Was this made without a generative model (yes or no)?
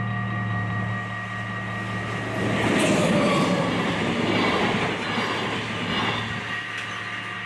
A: yes